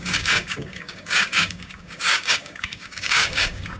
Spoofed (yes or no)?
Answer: yes